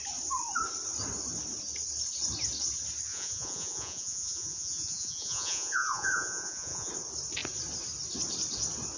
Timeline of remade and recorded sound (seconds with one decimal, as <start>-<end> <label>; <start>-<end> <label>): 0.0-3.1 recorded; 3.1-6.9 remade; 6.9-9.0 recorded